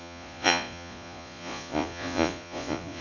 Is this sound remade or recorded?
remade